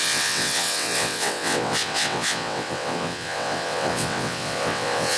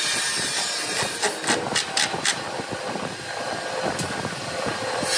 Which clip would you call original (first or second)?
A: second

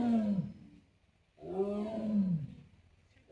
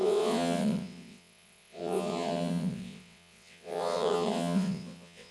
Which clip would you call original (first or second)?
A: first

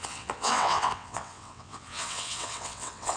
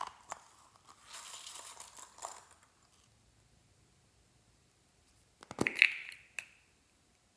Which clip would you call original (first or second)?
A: second